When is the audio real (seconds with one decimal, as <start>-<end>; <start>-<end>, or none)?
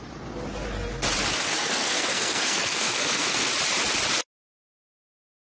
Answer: 0.0-1.6; 3.5-5.4